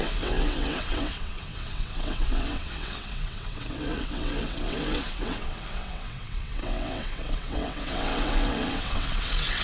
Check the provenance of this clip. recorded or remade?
remade